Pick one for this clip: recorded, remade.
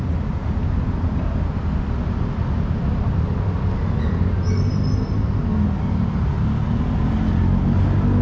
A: recorded